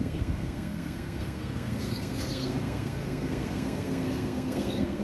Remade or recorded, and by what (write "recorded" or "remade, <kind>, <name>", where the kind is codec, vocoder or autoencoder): remade, codec, SNAC